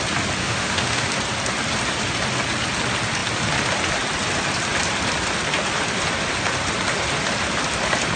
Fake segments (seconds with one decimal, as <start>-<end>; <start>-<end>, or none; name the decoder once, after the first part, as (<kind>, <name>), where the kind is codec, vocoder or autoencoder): 0.4-1.1 (autoencoder, DAC-VAE)